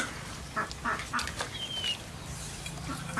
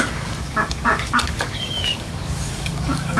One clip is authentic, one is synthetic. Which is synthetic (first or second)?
second